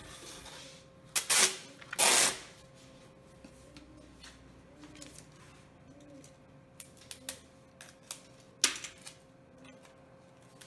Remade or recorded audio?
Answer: recorded